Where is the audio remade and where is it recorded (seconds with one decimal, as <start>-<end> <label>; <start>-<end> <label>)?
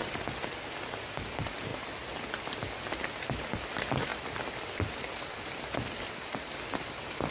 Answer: 0.0-7.3 recorded